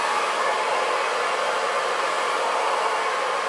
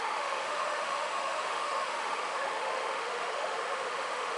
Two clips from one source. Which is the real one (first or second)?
first